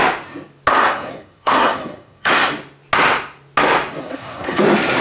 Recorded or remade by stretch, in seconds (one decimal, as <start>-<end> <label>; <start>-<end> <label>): 0.0-0.7 recorded; 0.7-2.5 remade; 2.5-4.0 recorded; 4.0-4.6 remade; 4.6-5.0 recorded